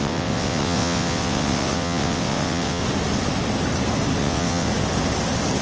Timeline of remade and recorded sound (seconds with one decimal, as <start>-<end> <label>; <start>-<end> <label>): 0.0-2.8 remade; 2.8-4.2 recorded; 4.2-4.7 remade; 4.7-5.6 recorded